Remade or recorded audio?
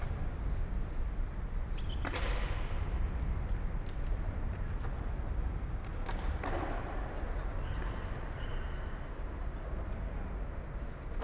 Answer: recorded